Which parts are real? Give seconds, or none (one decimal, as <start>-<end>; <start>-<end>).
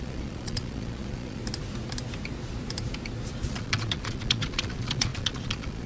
1.4-3.5